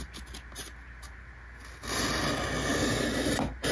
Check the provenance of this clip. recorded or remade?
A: recorded